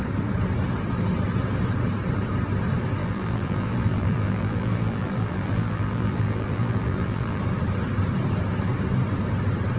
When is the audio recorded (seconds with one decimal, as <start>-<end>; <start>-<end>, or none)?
0.0-3.0; 7.4-9.8